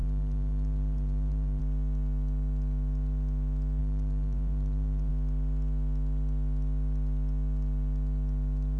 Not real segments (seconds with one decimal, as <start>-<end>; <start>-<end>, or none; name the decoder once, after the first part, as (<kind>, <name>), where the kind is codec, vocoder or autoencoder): 0.0-1.6 (vocoder, BigVGAN v2); 3.8-5.1